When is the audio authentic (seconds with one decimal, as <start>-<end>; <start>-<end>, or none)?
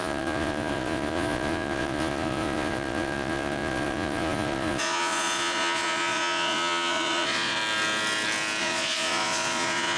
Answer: 7.6-8.6